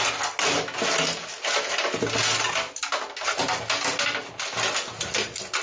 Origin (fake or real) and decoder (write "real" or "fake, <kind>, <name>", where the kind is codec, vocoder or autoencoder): real